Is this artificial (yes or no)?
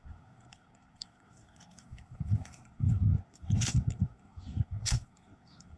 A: yes